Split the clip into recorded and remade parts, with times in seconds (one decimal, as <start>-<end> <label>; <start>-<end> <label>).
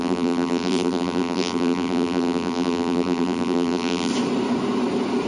0.0-4.1 remade; 4.1-5.3 recorded